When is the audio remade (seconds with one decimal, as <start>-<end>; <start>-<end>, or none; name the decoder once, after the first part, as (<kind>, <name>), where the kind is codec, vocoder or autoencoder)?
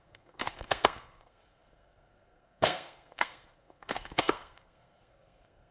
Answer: 0.0-5.7 (codec, SNAC)